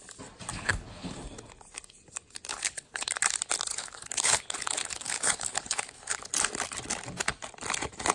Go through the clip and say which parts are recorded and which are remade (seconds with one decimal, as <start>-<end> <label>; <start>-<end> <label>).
0.0-0.5 recorded; 0.5-1.1 remade; 1.1-2.5 recorded; 2.5-3.1 remade; 3.1-3.7 recorded; 3.7-6.2 remade; 6.2-8.1 recorded